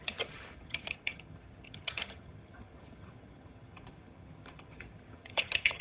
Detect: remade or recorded remade